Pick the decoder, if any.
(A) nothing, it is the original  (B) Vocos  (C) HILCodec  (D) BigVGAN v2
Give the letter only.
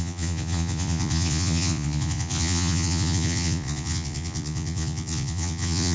B